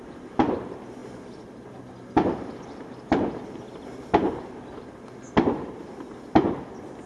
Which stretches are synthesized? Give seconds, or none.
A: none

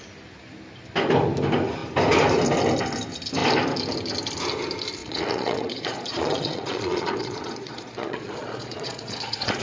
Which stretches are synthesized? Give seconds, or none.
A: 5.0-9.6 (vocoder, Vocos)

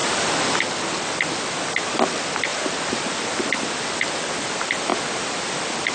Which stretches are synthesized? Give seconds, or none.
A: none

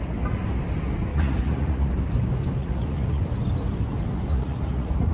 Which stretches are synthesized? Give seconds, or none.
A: 1.1-1.9 (vocoder, Vocos); 2.6-3.2; 4.3-5.1

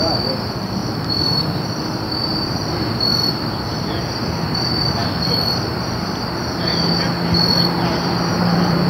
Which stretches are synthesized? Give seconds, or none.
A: 0.8-1.8 (vocoder, BigVGAN v2); 2.3-2.9; 8.3-8.9

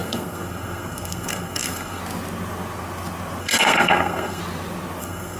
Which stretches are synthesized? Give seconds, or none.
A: 0.0-2.0 (codec, SNAC); 3.4-4.4; 5.0-5.4

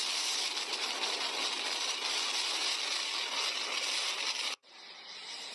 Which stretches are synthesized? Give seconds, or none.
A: none

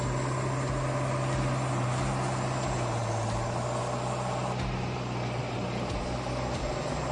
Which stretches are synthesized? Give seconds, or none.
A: none